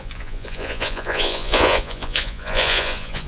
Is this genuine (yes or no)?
no